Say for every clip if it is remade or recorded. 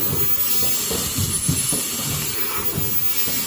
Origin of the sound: recorded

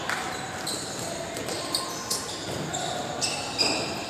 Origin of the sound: recorded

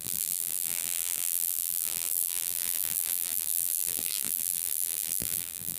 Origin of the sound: remade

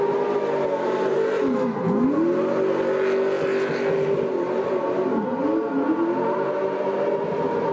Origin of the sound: recorded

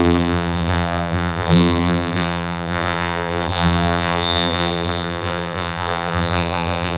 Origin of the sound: remade